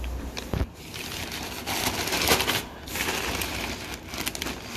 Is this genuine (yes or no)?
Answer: yes